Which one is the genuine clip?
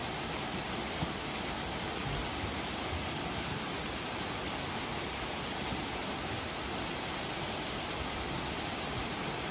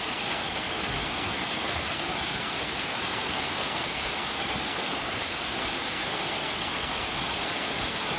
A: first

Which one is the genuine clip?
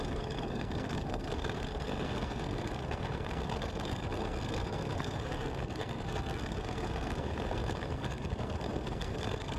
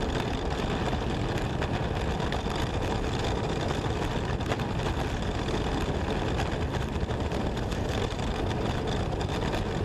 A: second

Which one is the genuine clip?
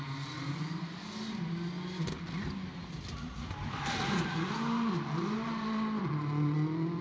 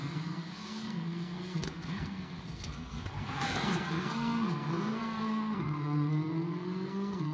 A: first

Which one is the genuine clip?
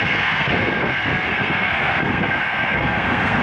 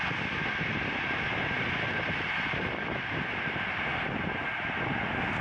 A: second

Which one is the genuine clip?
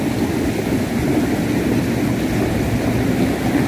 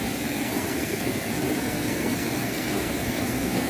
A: first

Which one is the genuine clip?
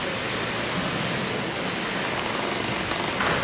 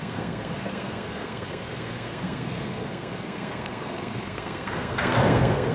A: first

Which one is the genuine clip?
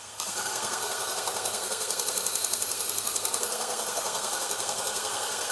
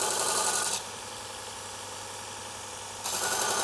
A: second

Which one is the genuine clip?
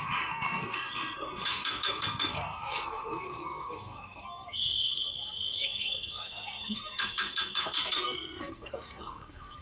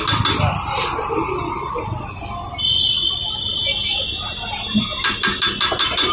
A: second